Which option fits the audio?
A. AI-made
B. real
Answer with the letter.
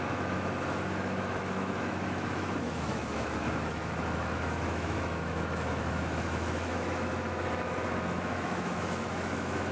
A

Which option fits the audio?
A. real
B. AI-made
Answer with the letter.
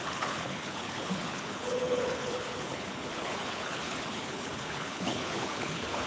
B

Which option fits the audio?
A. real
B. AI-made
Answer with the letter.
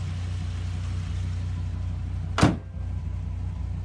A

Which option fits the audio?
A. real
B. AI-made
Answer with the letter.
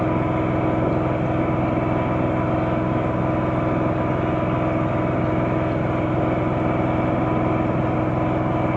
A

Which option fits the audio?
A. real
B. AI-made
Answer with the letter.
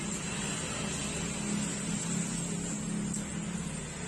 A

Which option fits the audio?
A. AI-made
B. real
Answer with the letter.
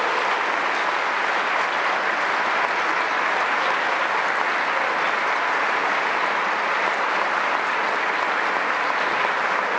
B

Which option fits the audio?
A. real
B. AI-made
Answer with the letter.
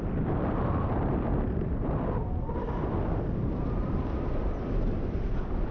B